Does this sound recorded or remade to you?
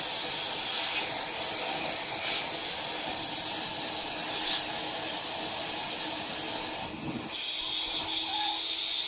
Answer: recorded